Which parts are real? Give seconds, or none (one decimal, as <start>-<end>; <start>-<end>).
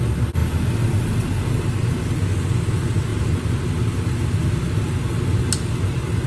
0.0-6.3